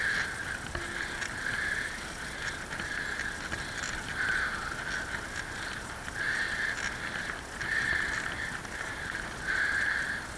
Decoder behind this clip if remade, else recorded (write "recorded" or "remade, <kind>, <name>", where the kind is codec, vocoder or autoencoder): recorded